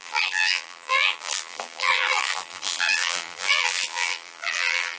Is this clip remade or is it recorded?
remade